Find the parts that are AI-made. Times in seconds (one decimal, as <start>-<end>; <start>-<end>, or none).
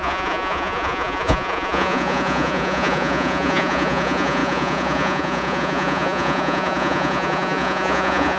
0.0-8.4